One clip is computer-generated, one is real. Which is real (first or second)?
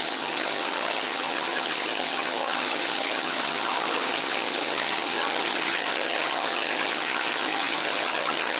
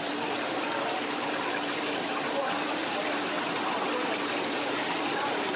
second